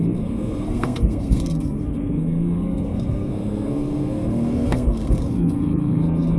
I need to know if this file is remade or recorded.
remade